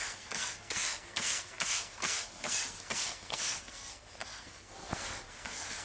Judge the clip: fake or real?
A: fake